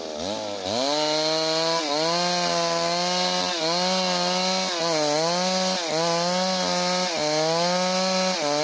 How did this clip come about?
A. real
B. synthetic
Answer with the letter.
A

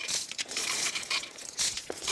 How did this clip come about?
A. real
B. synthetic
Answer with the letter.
B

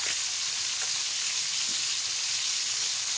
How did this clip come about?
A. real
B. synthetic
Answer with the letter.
A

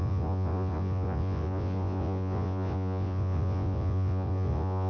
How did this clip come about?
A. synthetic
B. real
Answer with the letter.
A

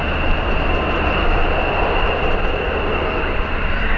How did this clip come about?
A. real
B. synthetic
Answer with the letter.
A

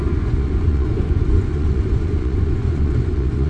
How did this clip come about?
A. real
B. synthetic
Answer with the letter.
B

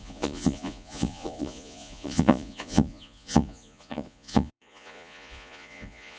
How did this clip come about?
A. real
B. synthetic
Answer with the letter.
B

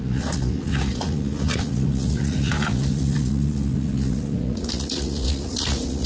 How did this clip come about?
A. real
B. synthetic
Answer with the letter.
B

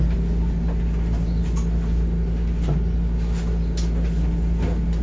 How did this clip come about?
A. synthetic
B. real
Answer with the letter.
B